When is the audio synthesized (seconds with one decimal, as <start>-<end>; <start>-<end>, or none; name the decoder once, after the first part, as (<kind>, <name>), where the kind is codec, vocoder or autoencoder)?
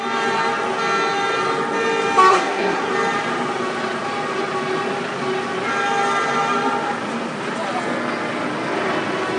2.3-2.9 (codec, SNAC)